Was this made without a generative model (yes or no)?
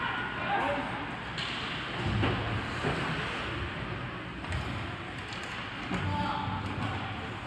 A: yes